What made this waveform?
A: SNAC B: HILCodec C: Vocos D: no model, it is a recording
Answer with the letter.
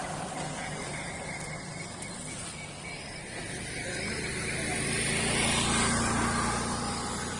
D